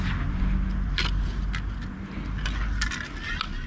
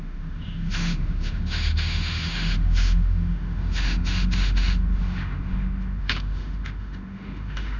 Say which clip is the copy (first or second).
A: second